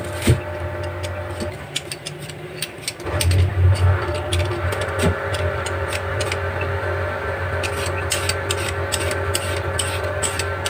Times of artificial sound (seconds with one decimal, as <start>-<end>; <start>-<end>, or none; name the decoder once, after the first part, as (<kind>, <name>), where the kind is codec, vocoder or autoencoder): none